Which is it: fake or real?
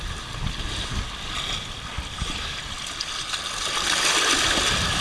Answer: real